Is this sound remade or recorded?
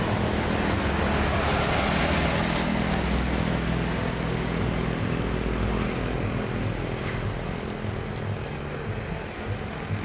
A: recorded